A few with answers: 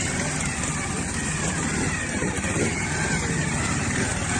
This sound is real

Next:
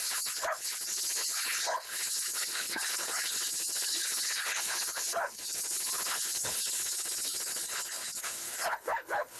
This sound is fake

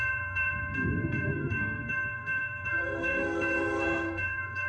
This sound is fake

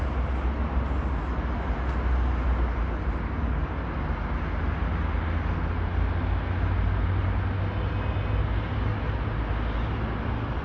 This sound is real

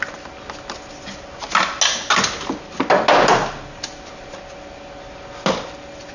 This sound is real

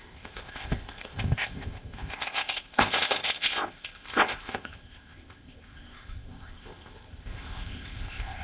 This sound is fake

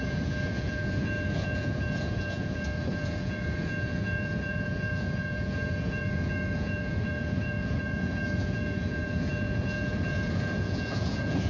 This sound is fake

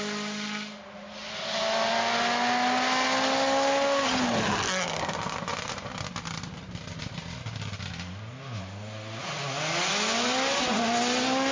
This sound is real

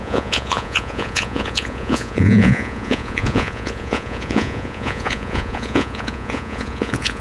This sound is fake